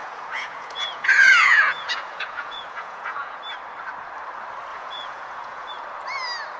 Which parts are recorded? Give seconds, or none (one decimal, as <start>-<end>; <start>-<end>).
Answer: 3.4-4.7; 5.7-6.6